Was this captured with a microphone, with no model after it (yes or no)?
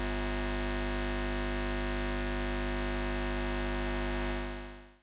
yes